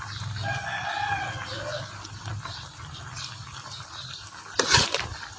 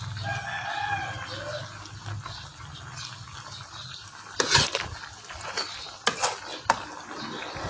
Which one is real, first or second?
second